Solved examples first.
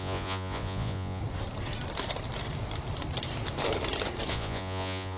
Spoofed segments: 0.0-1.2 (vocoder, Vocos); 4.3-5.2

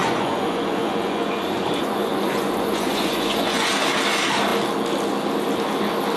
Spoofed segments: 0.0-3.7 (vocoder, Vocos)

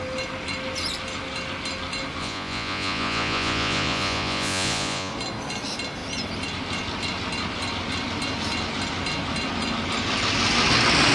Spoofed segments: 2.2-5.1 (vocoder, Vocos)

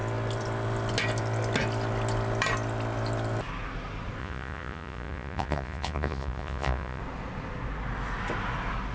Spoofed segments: 4.2-7.0 (vocoder, Vocos)

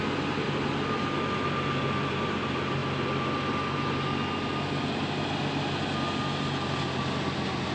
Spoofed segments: none

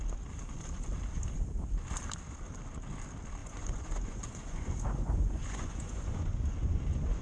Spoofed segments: 3.4-7.2 (vocoder, Vocos)

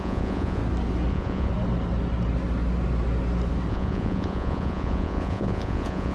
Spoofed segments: 0.0-0.6 (vocoder, Vocos); 1.1-1.5; 3.7-6.1